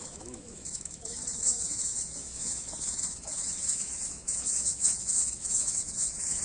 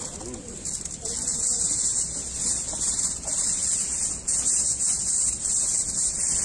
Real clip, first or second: second